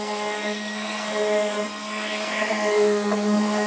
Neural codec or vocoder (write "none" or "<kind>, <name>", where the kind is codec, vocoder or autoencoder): codec, SNAC